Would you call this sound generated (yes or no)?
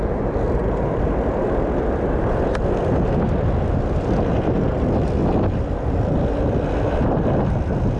no